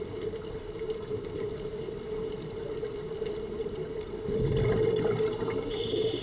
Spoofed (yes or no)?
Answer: no